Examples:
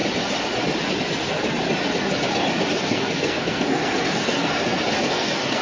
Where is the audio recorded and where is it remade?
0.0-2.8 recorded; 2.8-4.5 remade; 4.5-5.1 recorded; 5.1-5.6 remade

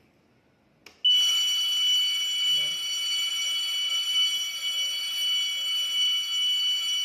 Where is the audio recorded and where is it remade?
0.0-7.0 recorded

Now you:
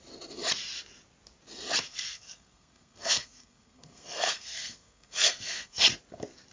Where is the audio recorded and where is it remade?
0.0-1.9 recorded; 1.9-5.8 remade; 5.8-6.5 recorded

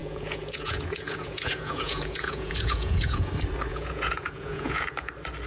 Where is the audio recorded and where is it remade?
0.0-3.3 remade; 3.3-3.7 recorded; 3.7-5.1 remade; 5.1-5.5 recorded

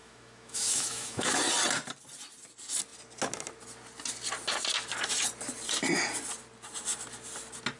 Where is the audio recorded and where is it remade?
0.0-1.4 remade; 1.4-7.8 recorded

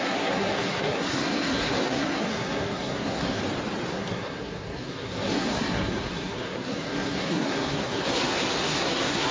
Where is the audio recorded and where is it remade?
0.0-3.4 remade; 3.4-3.9 recorded; 3.9-9.3 remade